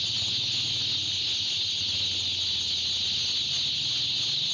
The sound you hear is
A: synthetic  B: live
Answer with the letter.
B